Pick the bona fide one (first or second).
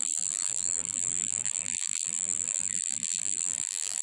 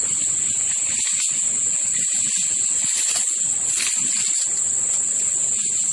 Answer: second